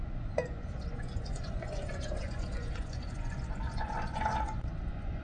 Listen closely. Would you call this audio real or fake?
fake